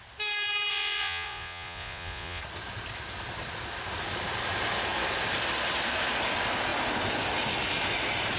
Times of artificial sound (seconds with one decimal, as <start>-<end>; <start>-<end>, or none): 0.7-2.4